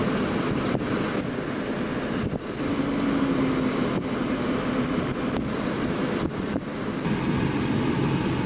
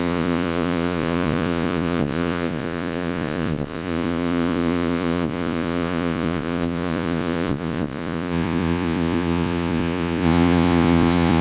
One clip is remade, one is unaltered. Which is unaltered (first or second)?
first